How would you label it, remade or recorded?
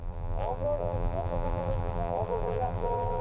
remade